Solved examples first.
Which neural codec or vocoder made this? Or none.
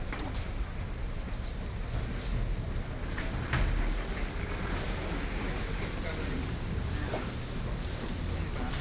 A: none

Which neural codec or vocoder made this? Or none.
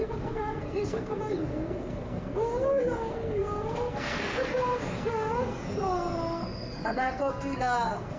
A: codec, SNAC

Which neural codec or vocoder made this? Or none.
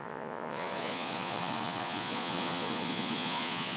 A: vocoder, Vocos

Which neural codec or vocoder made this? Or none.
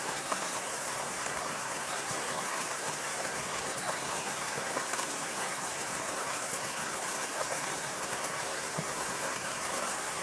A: codec, SNAC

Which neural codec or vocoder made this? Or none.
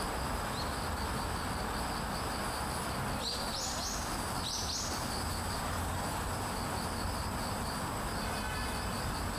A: none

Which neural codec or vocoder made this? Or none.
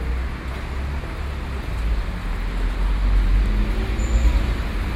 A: none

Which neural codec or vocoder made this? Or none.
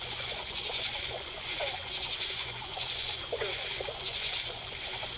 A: vocoder, Vocos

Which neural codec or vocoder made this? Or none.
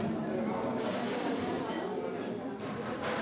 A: none